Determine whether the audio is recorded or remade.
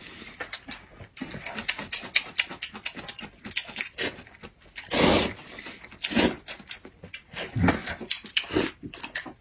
recorded